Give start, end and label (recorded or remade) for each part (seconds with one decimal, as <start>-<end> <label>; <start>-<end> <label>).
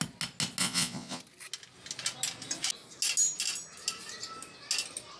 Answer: 0.0-0.6 recorded; 0.6-1.2 remade; 1.2-5.2 recorded